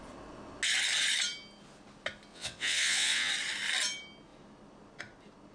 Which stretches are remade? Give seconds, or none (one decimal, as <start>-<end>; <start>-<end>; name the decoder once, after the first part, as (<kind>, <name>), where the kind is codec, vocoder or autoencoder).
2.3-3.3 (vocoder, WaveNeXt)